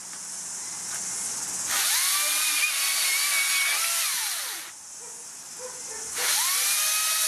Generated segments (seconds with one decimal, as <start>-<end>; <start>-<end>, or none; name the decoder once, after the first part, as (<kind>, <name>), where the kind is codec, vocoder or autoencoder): none